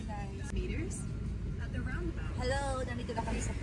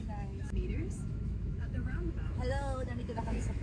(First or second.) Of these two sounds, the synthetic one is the second